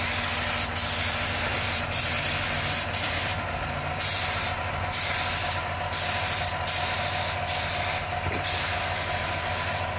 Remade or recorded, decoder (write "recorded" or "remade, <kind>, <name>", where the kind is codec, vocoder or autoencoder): recorded